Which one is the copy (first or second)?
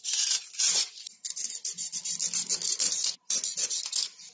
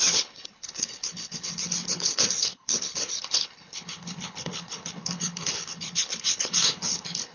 second